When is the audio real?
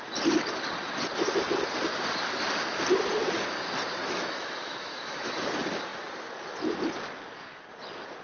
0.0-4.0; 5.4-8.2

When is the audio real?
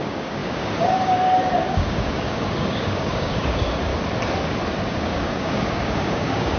3.9-4.9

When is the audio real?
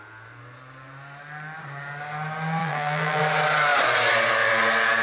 0.0-2.6; 3.2-5.0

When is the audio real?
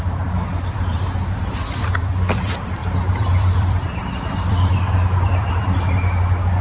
none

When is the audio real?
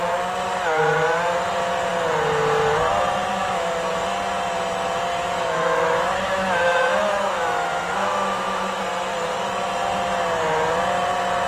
0.0-3.3; 3.9-5.1; 8.8-11.5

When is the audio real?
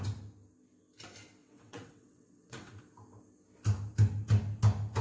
0.0-1.4; 2.8-5.0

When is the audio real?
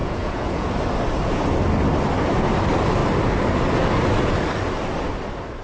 0.7-5.6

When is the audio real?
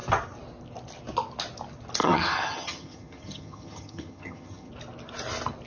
0.0-2.0; 4.7-5.7